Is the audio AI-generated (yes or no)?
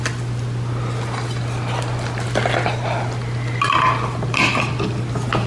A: no